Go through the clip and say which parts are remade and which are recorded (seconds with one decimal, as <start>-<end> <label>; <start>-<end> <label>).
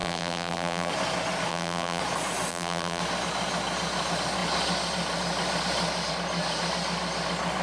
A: 0.0-0.9 remade; 0.9-1.5 recorded; 1.5-2.0 remade; 2.0-2.5 recorded; 2.5-3.0 remade; 3.0-7.6 recorded